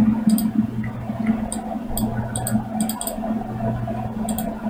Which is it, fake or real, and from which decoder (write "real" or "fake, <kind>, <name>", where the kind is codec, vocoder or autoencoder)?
real